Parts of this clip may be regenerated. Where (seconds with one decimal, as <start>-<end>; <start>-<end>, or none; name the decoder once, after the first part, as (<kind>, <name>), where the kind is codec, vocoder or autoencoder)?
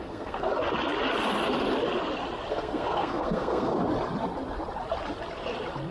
0.0-0.5 (codec, SNAC); 2.5-3.7